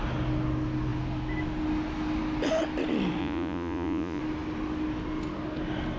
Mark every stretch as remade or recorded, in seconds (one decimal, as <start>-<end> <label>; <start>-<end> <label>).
0.0-3.2 recorded; 3.2-4.2 remade; 4.2-6.0 recorded